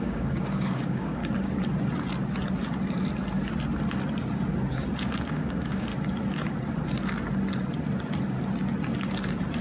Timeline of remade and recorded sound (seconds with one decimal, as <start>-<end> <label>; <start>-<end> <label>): 0.0-1.2 remade; 1.2-5.3 recorded; 5.3-5.9 remade; 5.9-9.6 recorded